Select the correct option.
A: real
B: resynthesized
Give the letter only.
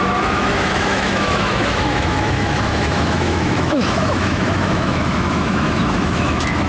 B